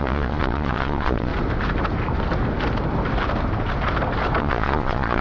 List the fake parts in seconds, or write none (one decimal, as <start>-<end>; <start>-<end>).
0.0-1.3; 4.4-5.2